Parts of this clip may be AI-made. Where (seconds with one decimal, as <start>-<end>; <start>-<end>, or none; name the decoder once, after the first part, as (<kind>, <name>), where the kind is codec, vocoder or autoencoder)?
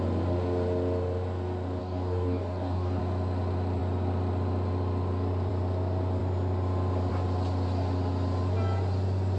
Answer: 1.8-3.0 (codec, DAC)